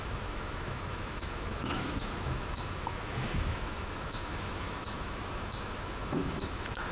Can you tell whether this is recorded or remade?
remade